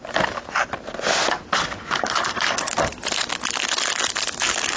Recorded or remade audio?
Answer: recorded